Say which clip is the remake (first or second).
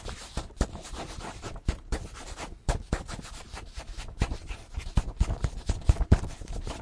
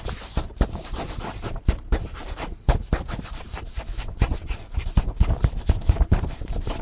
second